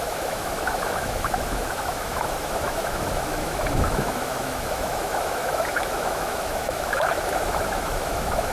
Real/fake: fake